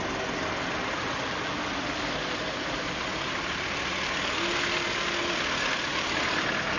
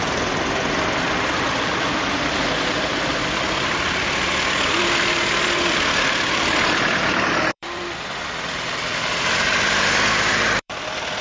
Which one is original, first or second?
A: first